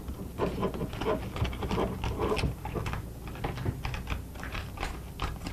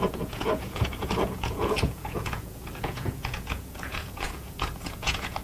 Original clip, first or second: first